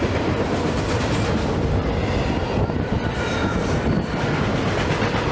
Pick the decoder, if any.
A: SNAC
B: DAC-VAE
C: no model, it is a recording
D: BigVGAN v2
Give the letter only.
D